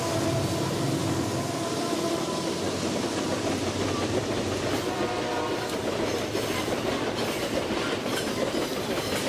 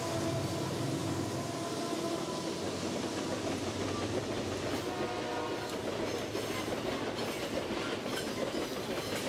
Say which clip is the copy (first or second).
first